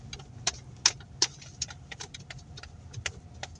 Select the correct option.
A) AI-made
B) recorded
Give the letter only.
B